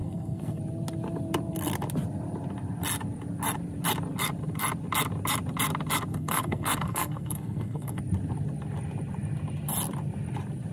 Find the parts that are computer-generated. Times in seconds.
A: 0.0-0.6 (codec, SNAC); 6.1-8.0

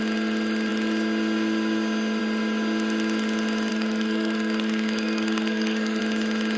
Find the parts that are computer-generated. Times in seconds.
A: 3.7-6.0 (codec, SNAC)